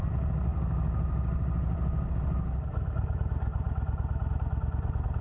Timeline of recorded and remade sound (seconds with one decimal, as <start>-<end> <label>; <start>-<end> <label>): 0.0-0.5 recorded; 0.5-2.1 remade; 2.1-5.2 recorded